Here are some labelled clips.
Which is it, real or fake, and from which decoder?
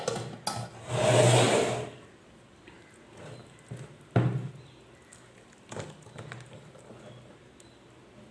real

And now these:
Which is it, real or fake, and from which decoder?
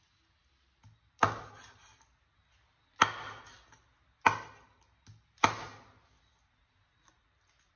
real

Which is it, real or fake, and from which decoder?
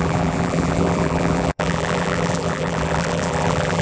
fake, vocoder, BigVGAN v2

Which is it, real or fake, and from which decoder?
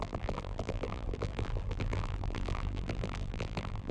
fake, vocoder, BigVGAN v2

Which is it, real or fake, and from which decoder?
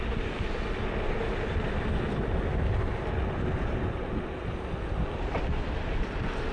fake, vocoder, BigVGAN v2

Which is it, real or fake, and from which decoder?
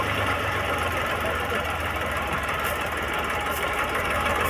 fake, vocoder, BigVGAN v2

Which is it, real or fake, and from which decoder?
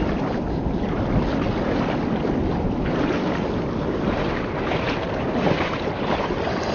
real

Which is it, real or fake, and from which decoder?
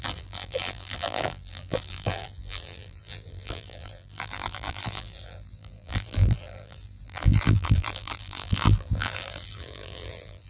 fake, vocoder, BigVGAN v2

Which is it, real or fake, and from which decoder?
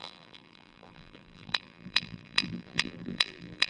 fake, vocoder, BigVGAN v2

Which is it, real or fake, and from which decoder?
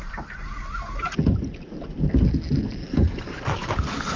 real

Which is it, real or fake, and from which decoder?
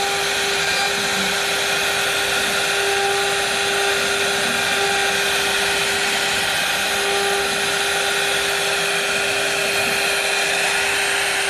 real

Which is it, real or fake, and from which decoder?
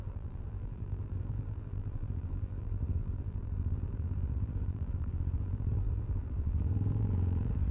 fake, vocoder, BigVGAN v2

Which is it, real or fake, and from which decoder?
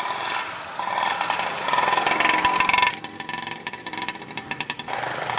fake, vocoder, BigVGAN v2